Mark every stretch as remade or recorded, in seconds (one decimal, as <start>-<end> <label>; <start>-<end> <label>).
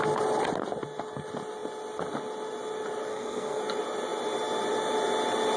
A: 0.0-3.1 recorded; 3.1-3.6 remade; 3.6-5.6 recorded